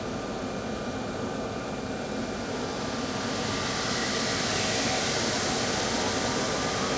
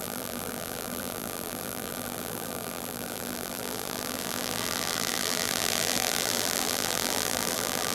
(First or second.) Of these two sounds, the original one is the first